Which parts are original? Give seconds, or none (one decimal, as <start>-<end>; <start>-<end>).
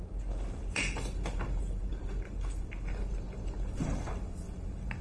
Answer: 0.0-5.0